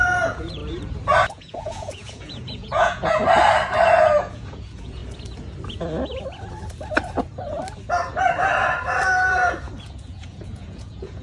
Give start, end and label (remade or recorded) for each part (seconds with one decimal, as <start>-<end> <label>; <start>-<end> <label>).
0.0-0.6 remade; 0.6-1.3 recorded; 1.3-3.2 remade; 3.2-4.0 recorded; 4.0-5.0 remade; 5.0-9.8 recorded; 9.8-11.2 remade